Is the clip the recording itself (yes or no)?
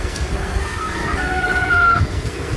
no